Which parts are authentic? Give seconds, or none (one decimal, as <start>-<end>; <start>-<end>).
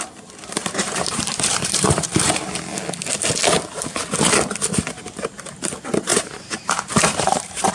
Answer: 0.0-0.6; 2.5-6.1